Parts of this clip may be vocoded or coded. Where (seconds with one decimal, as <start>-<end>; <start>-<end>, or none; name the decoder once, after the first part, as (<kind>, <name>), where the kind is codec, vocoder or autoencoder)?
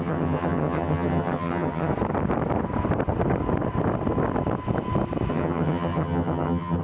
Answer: 0.0-1.9 (vocoder, HiFi-GAN); 5.3-6.8